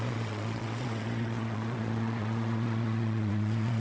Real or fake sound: fake